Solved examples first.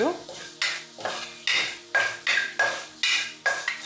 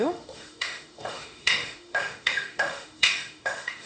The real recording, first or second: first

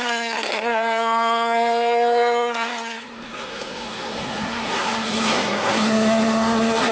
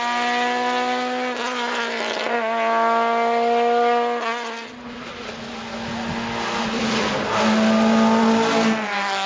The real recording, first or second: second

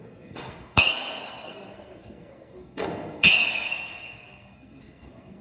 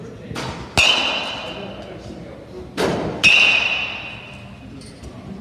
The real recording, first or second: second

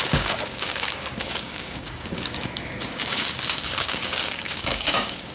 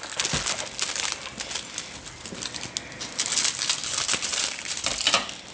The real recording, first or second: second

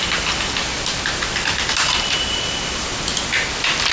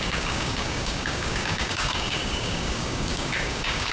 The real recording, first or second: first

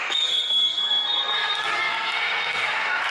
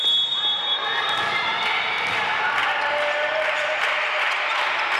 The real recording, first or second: second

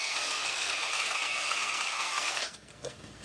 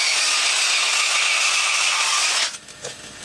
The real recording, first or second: second